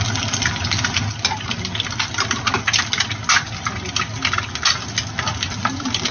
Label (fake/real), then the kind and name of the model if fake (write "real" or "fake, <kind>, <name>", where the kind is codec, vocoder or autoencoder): real